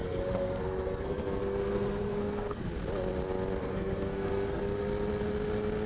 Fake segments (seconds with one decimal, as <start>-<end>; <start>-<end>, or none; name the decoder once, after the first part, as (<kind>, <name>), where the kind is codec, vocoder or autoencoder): 0.0-2.7 (codec, SNAC); 3.6-4.6